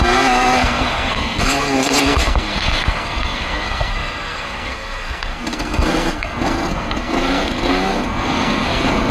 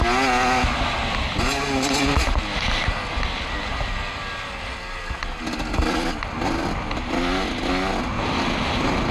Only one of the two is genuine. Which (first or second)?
second